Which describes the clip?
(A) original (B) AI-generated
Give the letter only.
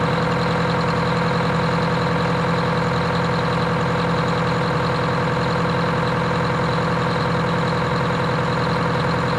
A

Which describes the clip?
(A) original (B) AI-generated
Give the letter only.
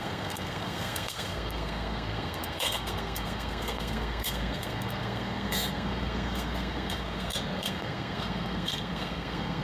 B